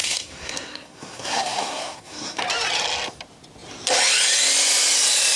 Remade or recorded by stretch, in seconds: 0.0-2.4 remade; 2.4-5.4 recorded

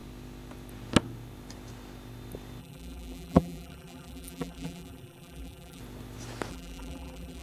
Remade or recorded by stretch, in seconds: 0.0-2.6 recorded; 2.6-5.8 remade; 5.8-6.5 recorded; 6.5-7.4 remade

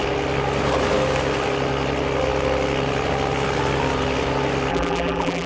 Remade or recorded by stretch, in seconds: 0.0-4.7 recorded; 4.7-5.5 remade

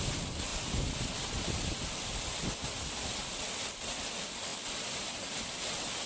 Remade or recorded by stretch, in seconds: 0.0-6.1 recorded